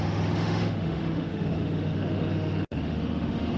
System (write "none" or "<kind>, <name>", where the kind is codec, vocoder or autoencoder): autoencoder, DAC-VAE